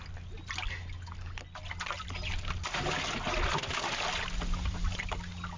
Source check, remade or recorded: recorded